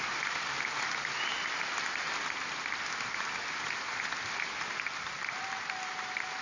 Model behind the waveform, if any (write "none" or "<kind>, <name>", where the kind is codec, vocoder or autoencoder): none